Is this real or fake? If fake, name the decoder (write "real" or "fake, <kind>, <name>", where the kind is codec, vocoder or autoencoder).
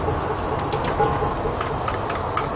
real